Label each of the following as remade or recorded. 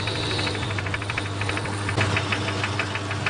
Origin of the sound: recorded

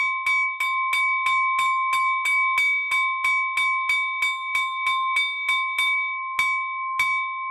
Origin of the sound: recorded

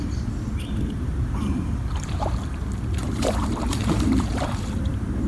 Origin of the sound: remade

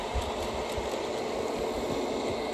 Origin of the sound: recorded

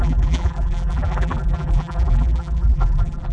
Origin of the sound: remade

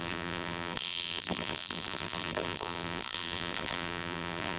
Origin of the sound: remade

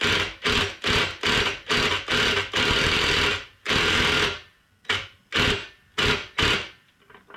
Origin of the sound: recorded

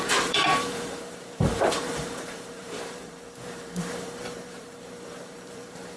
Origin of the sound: remade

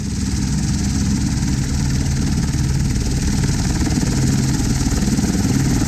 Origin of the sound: recorded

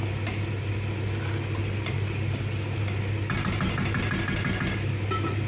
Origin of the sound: recorded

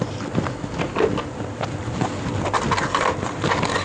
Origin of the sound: recorded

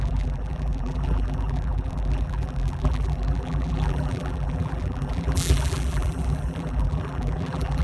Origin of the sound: remade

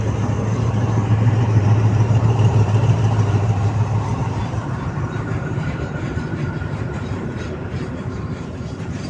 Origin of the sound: remade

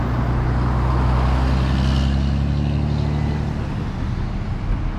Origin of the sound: recorded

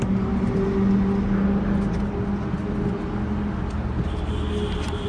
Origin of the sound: recorded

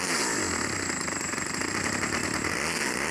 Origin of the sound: remade